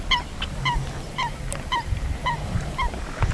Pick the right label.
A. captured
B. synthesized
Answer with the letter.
A